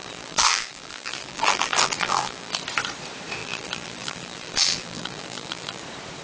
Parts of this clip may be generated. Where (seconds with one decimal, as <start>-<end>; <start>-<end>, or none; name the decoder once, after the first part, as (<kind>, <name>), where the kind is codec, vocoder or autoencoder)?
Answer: 0.0-2.6 (vocoder, BigVGAN v2); 3.4-5.8